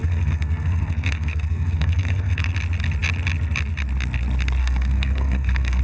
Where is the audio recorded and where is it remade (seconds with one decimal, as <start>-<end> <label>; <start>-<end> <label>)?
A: 0.0-2.5 remade; 2.5-4.6 recorded; 4.6-5.8 remade